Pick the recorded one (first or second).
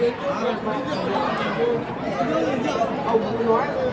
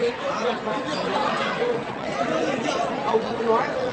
first